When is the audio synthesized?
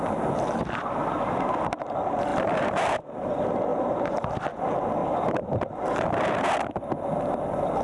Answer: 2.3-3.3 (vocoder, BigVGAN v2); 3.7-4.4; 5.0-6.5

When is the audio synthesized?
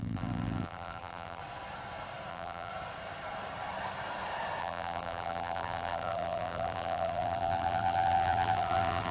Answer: 0.0-1.4 (vocoder, BigVGAN v2); 2.3-2.7; 4.6-9.1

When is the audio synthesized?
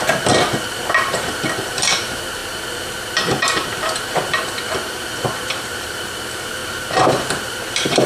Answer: 0.0-2.4 (vocoder, BigVGAN v2); 3.4-8.1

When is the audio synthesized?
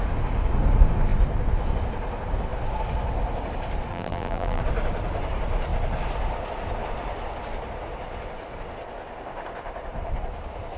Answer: 3.9-4.6 (vocoder, BigVGAN v2)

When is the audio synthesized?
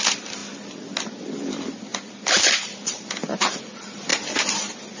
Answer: 0.0-0.4 (vocoder, BigVGAN v2); 1.2-4.1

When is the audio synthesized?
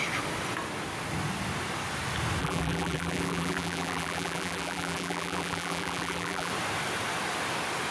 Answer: 2.4-6.5 (vocoder, BigVGAN v2)